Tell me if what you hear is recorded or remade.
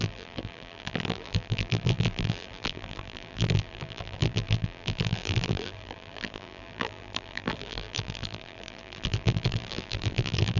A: remade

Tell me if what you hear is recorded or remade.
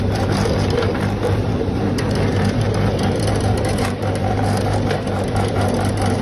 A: remade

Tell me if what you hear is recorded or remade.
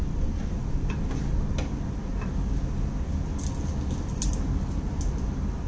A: recorded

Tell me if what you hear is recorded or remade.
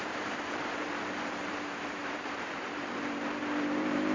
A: remade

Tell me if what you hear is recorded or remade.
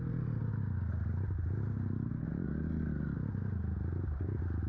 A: recorded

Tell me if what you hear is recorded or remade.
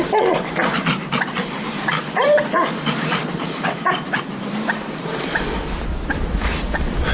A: remade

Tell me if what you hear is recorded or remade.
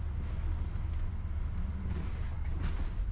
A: recorded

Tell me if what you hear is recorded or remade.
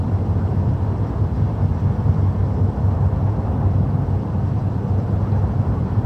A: remade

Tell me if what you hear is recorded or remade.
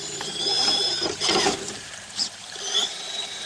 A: remade